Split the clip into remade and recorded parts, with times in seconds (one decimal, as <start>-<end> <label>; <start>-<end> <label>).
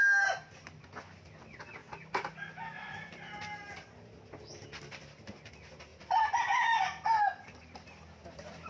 0.0-8.7 recorded